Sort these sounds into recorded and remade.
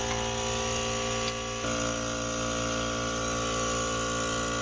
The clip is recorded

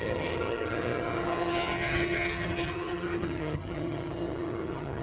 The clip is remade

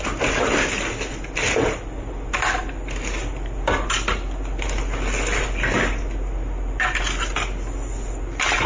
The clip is recorded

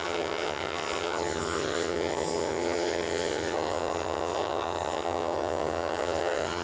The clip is remade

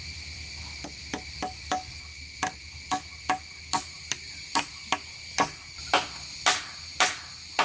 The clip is recorded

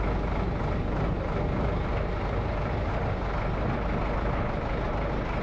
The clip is recorded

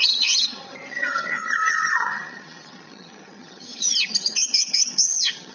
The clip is remade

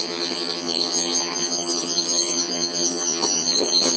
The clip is remade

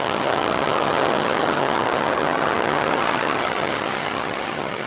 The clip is remade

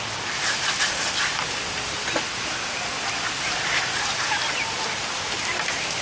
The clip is recorded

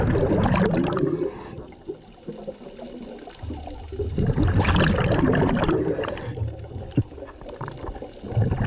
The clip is recorded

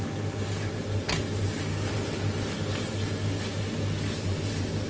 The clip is recorded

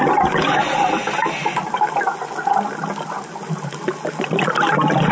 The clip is recorded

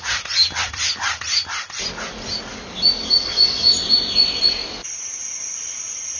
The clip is recorded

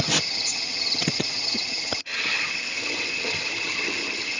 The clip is remade